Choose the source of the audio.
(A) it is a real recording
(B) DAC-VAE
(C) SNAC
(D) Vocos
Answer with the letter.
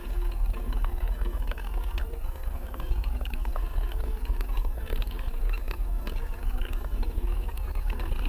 C